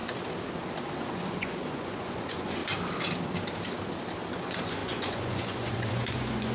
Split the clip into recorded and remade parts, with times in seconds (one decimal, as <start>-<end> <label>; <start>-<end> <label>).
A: 0.0-1.0 recorded; 1.0-2.6 remade; 2.6-4.3 recorded; 4.3-6.5 remade